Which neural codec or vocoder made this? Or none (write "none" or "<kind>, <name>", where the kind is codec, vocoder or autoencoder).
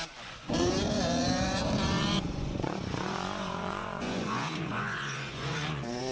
vocoder, Vocos